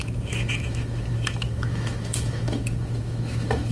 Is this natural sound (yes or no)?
no